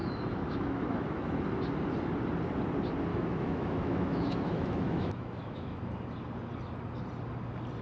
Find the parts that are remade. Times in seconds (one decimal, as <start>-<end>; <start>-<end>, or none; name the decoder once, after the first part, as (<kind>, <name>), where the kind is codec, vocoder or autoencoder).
0.0-1.4 (autoencoder, DAC-VAE); 3.1-5.8